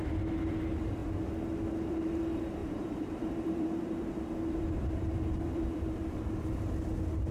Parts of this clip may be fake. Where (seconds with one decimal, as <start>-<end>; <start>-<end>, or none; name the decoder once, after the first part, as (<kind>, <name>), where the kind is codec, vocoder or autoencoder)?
0.0-1.0 (vocoder, BigVGAN v2); 1.9-7.3